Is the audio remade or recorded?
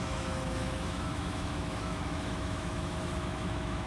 remade